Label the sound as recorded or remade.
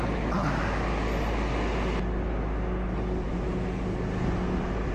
recorded